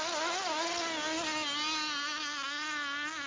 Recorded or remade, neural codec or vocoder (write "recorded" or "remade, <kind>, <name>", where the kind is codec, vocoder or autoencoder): recorded